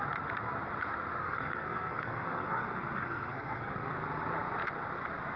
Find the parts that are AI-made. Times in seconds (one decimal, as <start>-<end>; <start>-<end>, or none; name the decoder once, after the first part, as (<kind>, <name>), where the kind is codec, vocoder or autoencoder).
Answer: 1.2-3.9 (codec, SNAC)